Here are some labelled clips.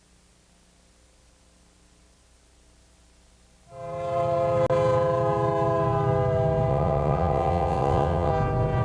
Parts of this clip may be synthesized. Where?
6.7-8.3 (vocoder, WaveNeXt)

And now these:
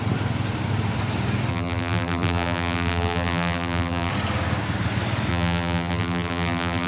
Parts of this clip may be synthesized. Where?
1.5-4.1 (vocoder, BigVGAN v2); 5.3-6.9